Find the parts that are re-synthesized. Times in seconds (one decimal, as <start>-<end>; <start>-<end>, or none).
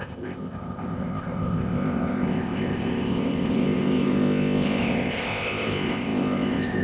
0.0-6.8